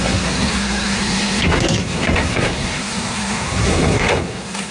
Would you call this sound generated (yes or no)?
yes